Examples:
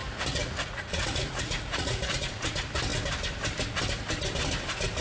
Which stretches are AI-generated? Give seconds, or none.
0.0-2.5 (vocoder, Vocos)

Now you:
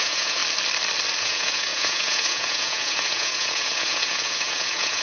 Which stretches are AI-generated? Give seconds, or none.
0.0-0.4 (vocoder, Vocos); 1.2-5.0

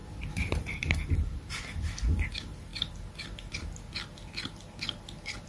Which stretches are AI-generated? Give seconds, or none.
0.0-1.6 (vocoder, BigVGAN v2)